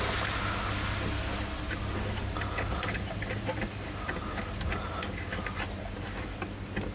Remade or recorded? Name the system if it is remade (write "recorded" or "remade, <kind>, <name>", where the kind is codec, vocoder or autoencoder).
recorded